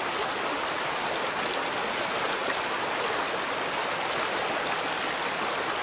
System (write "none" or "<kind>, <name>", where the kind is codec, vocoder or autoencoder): none